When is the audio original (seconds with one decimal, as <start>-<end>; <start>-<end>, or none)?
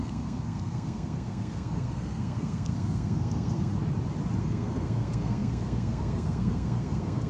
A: 3.7-4.4